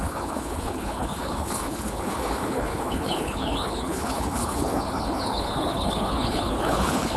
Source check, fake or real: fake